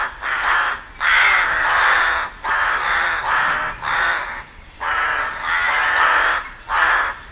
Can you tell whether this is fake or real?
real